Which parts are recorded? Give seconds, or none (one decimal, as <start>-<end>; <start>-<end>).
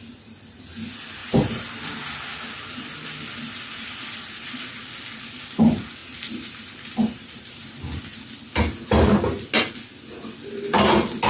0.0-1.2; 1.8-6.0; 7.7-11.3